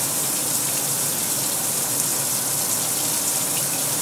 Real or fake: real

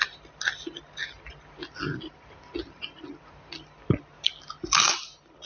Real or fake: real